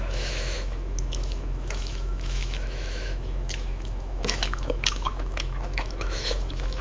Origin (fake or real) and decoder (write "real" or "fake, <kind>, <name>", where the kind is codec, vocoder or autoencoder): fake, autoencoder, DAC-VAE